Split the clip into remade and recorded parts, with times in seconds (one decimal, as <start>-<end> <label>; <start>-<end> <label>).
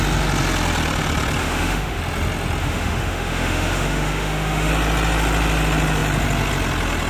0.0-1.4 recorded; 1.4-2.0 remade; 2.0-2.6 recorded; 2.6-4.7 remade; 4.7-7.1 recorded